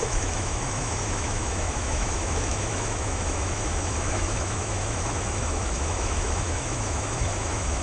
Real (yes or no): no